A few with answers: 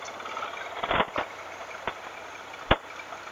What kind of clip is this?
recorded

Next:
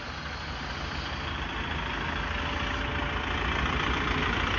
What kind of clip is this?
recorded